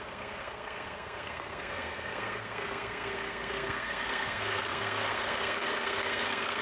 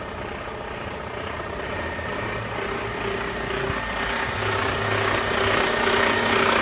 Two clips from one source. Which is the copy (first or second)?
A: first